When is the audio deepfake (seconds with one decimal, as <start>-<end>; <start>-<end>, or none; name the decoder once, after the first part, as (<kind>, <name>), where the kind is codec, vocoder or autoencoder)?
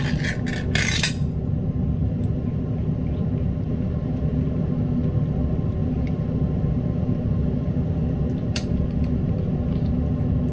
2.0-4.7 (vocoder, BigVGAN v2); 5.8-9.3